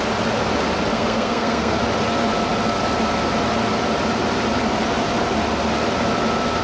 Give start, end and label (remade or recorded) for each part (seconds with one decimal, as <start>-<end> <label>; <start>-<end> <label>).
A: 0.0-0.9 recorded; 0.9-1.8 remade; 1.8-6.6 recorded